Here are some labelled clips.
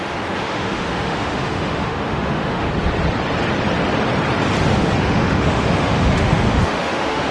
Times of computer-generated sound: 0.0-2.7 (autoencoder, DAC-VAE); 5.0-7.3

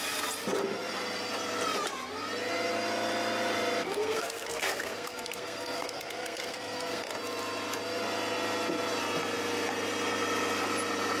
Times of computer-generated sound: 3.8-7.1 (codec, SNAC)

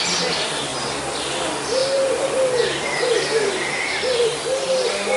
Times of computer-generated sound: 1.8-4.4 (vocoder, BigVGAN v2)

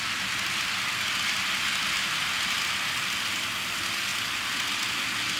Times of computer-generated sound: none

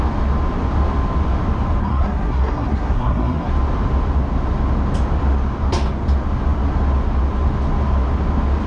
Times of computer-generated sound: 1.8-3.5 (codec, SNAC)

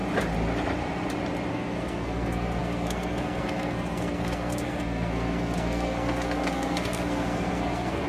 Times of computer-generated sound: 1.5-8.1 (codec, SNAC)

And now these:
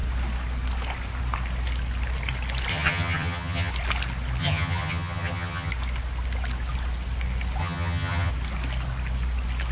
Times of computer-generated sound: 2.7-3.7 (vocoder, HiFi-GAN); 4.4-5.7; 7.6-8.3

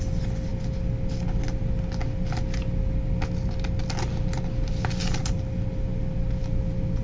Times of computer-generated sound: none